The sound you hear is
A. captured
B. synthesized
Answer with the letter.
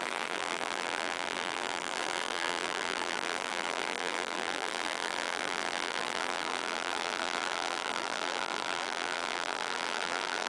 B